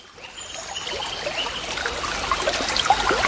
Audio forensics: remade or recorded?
recorded